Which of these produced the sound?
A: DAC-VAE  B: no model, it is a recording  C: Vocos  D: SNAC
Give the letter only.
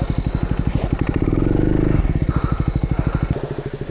B